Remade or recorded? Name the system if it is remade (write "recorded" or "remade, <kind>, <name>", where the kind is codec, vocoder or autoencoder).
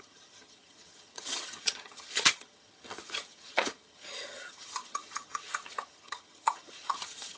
remade, vocoder, HiFi-GAN